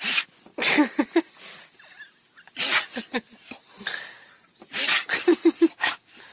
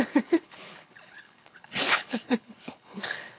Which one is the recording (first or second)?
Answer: first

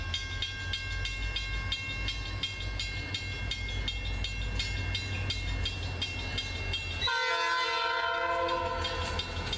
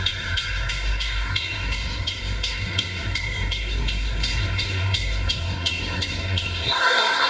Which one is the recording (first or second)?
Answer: first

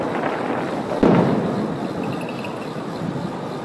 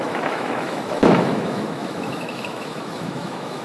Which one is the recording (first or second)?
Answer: first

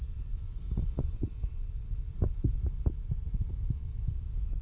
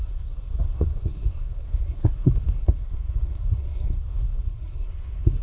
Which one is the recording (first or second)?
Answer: first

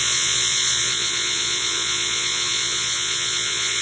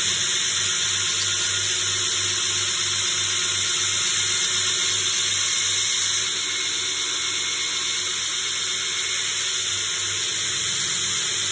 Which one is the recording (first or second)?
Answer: second